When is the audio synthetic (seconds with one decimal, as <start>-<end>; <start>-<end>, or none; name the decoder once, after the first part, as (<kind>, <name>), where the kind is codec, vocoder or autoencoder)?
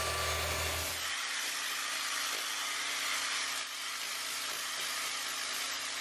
none